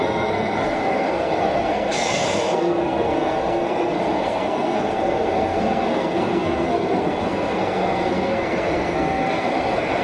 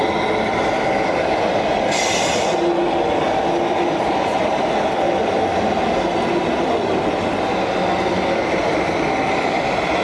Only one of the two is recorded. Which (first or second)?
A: second